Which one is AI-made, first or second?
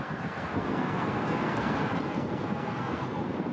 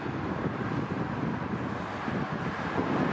first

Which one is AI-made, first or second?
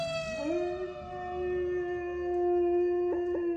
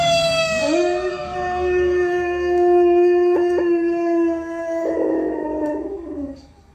second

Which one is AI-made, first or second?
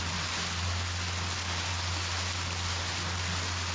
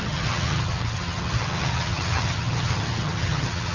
second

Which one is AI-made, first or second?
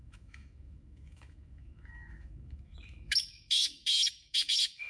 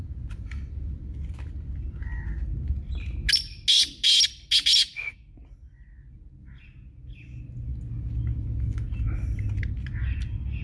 first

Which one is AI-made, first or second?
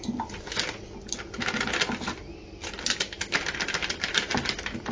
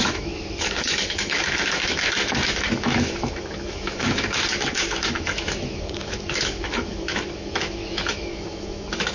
second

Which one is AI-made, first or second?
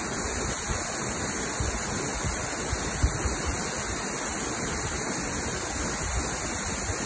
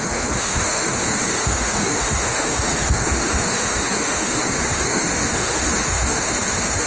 second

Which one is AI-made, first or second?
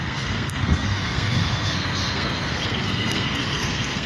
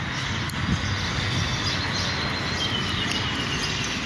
first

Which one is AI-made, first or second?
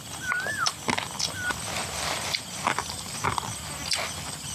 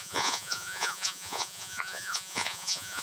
second